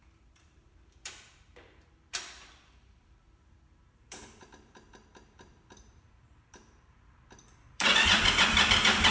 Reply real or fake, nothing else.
fake